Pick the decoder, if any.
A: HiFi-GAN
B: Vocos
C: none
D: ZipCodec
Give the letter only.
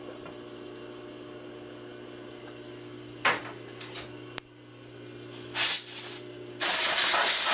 C